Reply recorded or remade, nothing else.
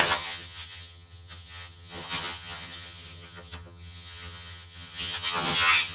remade